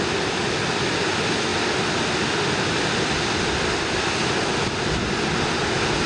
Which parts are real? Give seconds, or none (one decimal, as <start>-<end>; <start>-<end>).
0.0-6.1